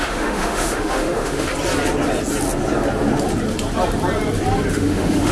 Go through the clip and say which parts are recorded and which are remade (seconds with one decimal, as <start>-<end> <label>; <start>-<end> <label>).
0.0-1.5 remade; 1.5-4.7 recorded; 4.7-5.3 remade